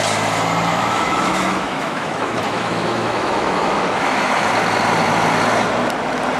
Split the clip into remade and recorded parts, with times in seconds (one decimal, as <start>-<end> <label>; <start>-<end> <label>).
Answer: 0.0-0.7 recorded; 0.7-4.5 remade; 4.5-6.4 recorded